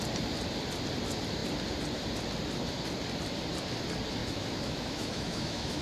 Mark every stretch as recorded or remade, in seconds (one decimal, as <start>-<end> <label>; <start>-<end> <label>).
0.0-4.2 recorded; 4.2-5.8 remade

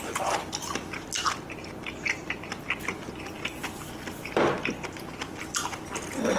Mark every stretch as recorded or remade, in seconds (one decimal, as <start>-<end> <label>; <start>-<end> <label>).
0.0-3.6 recorded; 3.6-4.5 remade; 4.5-6.4 recorded